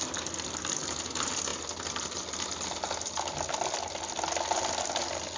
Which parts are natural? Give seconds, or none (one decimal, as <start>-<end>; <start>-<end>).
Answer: 0.0-5.4

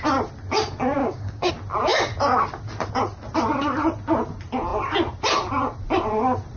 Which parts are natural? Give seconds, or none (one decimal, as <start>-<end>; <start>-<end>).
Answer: 0.0-1.0; 1.5-6.6

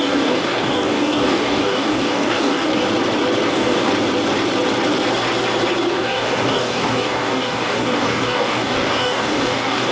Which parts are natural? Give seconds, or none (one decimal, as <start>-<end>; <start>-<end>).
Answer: 2.7-3.5; 3.9-5.9